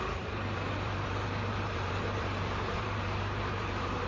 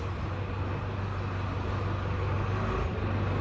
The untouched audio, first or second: second